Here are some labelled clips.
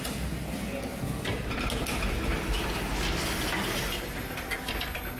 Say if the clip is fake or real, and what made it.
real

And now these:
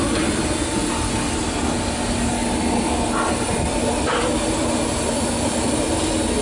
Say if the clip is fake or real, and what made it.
real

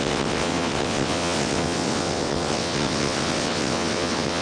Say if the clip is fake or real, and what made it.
fake, vocoder, WaveNeXt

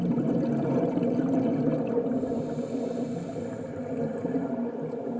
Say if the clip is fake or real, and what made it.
real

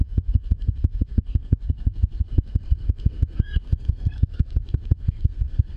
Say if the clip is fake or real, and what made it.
fake, codec, SNAC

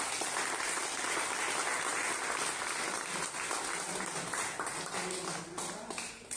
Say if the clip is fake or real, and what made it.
real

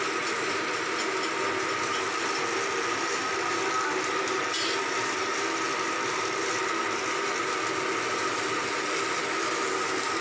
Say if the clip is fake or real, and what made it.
real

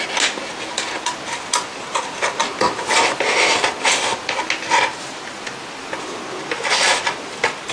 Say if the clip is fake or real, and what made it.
real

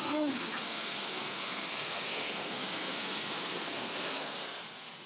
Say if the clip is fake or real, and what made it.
fake, codec, SNAC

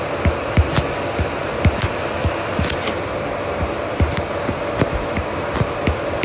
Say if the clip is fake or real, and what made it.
real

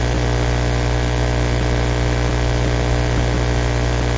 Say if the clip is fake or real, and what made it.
real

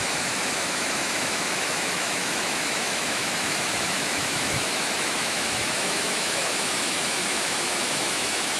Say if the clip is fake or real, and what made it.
fake, autoencoder, DAC-VAE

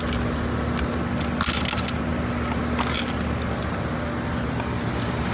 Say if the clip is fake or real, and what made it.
real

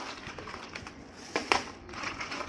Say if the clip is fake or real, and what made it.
fake, vocoder, Vocos